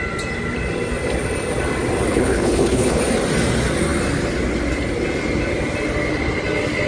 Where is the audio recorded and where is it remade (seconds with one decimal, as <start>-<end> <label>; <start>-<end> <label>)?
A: 0.0-2.1 recorded; 2.1-3.0 remade; 3.0-6.9 recorded